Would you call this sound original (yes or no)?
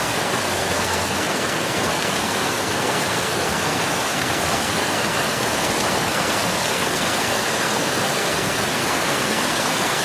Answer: no